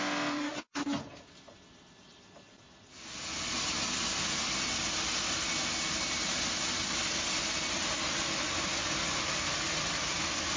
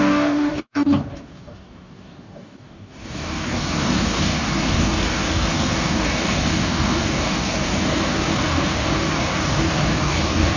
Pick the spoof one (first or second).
second